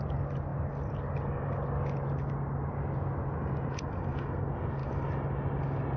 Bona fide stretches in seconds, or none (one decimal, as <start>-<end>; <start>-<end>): 0.0-6.0